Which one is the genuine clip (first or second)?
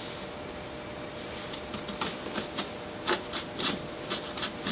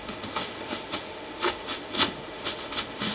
first